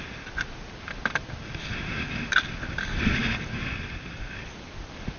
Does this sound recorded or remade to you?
recorded